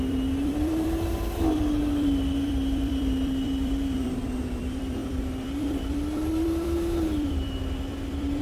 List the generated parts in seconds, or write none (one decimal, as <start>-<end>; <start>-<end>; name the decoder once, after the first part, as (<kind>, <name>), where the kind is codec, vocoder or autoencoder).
0.0-8.4 (vocoder, BigVGAN v2)